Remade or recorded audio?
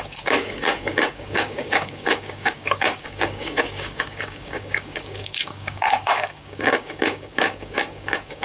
remade